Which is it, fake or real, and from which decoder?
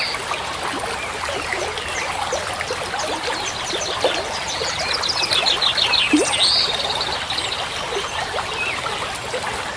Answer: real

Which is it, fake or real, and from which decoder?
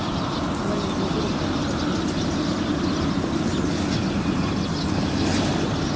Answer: real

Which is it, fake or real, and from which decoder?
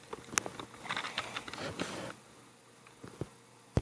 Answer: real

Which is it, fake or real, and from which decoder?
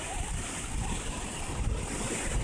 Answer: real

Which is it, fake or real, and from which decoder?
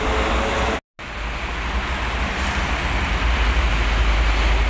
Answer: real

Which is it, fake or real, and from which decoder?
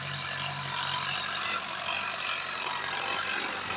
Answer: real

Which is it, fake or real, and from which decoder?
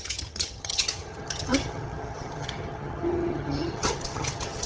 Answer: fake, vocoder, HiFi-GAN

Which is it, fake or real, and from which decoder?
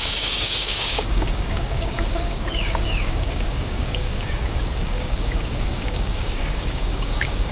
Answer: fake, codec, DAC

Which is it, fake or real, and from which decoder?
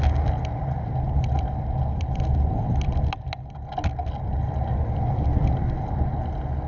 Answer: real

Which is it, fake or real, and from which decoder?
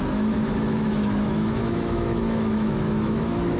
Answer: fake, autoencoder, DAC-VAE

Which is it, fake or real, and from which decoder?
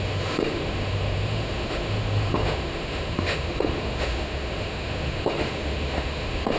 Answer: fake, autoencoder, DAC-VAE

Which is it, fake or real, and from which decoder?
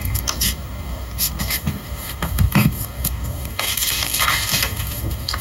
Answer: fake, codec, DAC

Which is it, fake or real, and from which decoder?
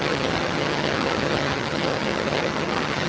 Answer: fake, vocoder, HiFi-GAN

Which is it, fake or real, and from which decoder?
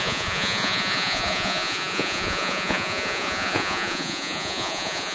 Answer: fake, vocoder, Vocos